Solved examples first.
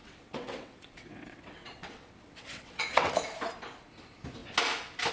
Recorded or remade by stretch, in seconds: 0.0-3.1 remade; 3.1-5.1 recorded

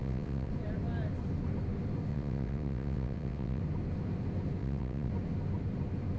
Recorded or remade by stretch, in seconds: 0.0-0.5 remade; 0.5-2.1 recorded; 2.1-3.6 remade; 3.6-4.6 recorded; 4.6-5.1 remade; 5.1-6.2 recorded

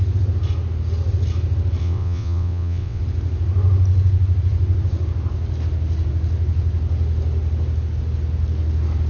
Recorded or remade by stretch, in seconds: 0.0-1.8 recorded; 1.8-3.0 remade; 3.0-9.1 recorded

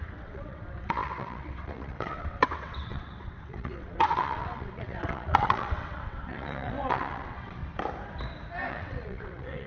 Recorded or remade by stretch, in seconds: 0.0-7.6 remade; 7.6-8.7 recorded; 8.7-9.7 remade

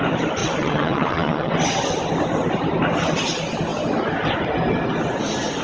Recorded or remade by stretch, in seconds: 0.0-0.4 recorded; 0.4-1.5 remade; 1.5-5.6 recorded

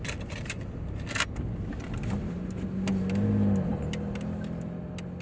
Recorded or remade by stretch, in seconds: 0.0-5.2 recorded

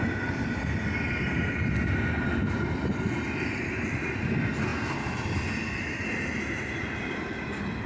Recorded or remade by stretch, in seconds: 0.0-7.9 recorded